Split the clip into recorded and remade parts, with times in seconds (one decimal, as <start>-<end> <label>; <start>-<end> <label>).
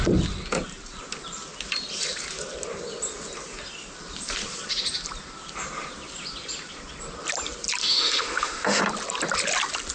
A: 0.0-7.8 recorded; 7.8-8.8 remade; 8.8-9.9 recorded